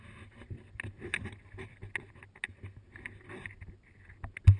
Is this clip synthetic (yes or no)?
no